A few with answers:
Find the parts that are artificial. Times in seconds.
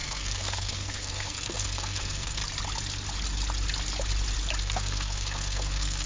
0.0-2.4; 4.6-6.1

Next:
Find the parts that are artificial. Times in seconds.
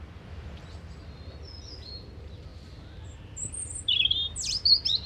none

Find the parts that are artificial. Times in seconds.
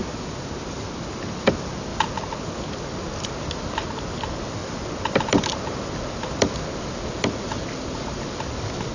none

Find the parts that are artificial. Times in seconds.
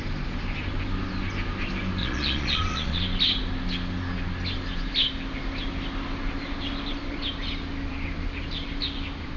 2.0-3.0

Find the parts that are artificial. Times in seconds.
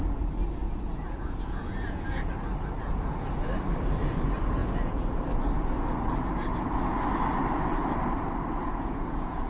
0.6-2.3; 2.8-3.3; 4.6-5.2; 8.6-9.5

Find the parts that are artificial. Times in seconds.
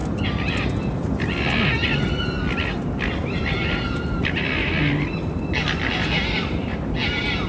none